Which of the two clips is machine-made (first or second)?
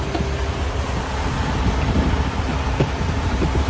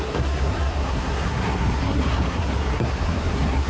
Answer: second